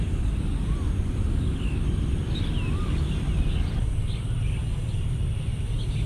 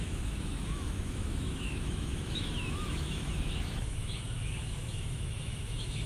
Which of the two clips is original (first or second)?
first